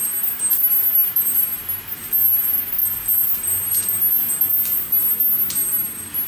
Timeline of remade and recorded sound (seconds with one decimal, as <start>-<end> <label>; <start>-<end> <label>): 0.0-6.3 recorded